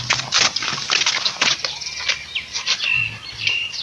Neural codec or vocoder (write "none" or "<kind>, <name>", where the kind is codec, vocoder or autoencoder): none